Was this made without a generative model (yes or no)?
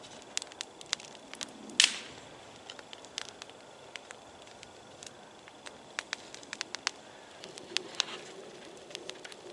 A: yes